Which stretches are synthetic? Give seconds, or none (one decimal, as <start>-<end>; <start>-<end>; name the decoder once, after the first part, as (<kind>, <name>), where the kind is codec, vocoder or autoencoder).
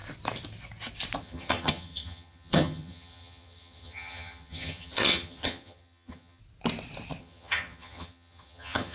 1.2-6.4 (vocoder, HiFi-GAN); 7.2-8.9